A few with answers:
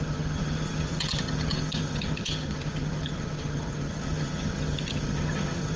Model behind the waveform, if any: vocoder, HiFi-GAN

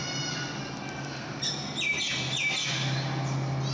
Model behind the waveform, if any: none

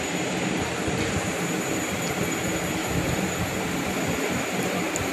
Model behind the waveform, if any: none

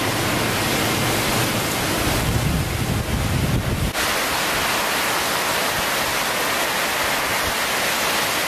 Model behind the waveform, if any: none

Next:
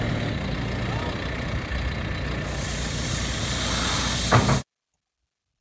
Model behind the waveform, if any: none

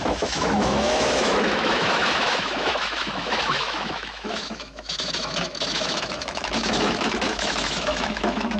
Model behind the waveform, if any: autoencoder, DAC-VAE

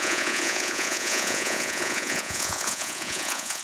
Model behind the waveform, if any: vocoder, Vocos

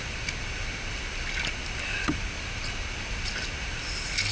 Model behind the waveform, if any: none